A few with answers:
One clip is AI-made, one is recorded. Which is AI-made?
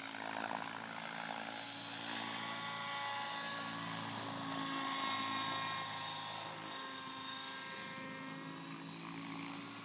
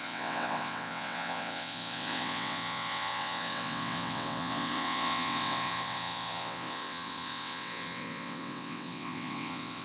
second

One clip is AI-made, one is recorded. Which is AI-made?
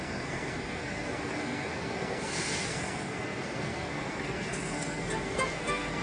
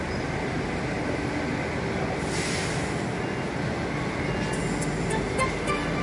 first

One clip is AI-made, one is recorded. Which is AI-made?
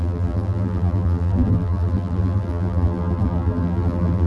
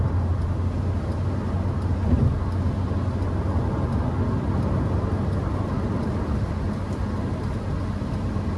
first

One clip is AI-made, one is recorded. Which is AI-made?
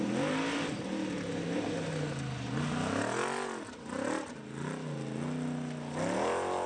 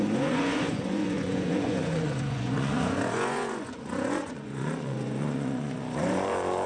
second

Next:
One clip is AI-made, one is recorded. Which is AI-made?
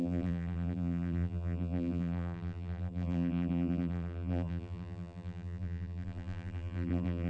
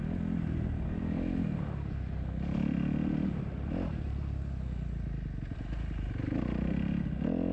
first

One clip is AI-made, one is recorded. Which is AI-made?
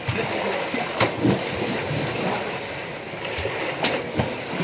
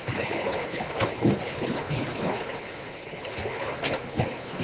second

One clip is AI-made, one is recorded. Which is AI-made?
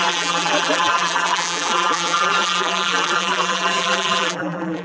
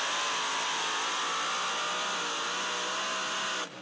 first